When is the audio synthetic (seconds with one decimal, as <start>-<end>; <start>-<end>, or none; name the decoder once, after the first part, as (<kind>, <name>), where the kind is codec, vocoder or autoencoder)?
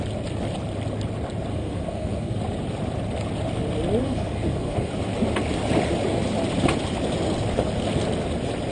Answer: 1.5-2.4 (codec, SNAC); 4.0-4.9